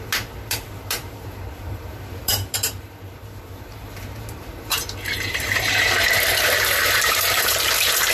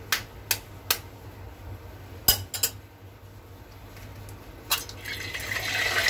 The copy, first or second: first